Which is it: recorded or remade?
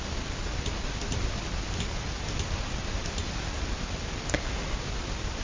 recorded